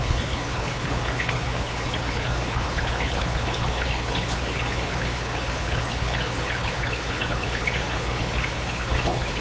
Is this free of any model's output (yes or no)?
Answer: no